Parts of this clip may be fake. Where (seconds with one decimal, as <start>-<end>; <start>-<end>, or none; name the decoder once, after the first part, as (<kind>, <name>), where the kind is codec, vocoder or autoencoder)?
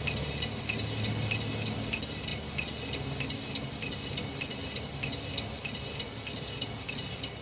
2.3-4.4 (vocoder, BigVGAN v2)